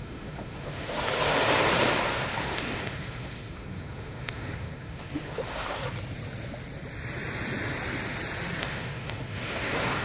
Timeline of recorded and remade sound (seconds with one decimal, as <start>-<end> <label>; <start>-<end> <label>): 0.0-1.1 remade; 1.1-2.4 recorded; 2.4-5.8 remade; 5.8-8.6 recorded; 8.6-10.0 remade